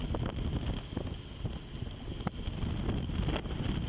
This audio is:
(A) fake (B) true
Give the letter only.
B